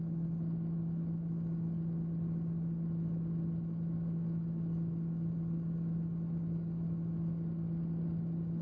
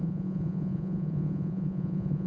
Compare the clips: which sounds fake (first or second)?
second